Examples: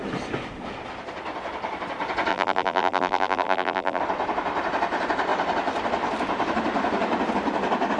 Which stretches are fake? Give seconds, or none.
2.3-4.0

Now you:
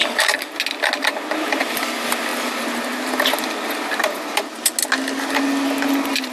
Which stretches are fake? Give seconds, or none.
0.0-0.5

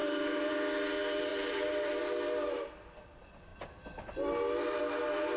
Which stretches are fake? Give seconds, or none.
0.0-0.5; 1.3-2.0

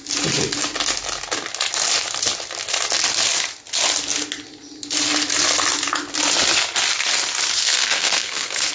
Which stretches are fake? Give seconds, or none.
7.6-8.7

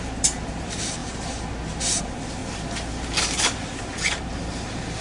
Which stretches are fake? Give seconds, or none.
0.0-2.4; 3.2-5.0